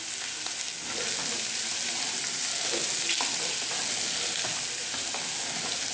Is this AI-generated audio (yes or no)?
no